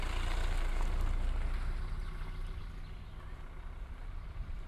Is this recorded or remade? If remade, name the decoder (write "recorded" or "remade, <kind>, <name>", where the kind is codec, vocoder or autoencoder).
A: recorded